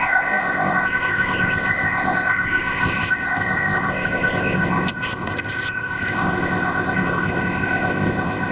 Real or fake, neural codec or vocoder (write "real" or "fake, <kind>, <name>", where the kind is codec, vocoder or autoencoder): fake, codec, ZipCodec